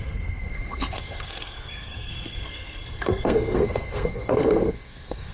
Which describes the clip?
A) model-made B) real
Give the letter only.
A